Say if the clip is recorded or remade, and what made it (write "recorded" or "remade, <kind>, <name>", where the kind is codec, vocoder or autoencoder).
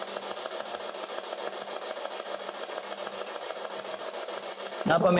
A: recorded